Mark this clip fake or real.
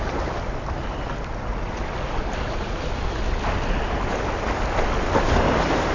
real